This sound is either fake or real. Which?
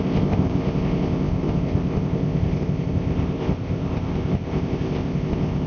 fake